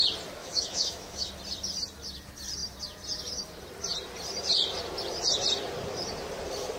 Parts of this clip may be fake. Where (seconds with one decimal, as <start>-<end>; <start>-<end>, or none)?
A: 0.4-1.3